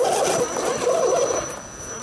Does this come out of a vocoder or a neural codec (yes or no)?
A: no